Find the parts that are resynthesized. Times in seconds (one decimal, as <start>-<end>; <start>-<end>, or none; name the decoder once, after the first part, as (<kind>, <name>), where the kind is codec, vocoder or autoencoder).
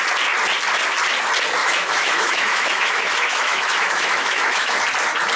1.6-4.8 (autoencoder, DAC-VAE)